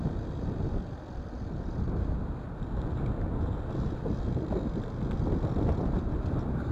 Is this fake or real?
real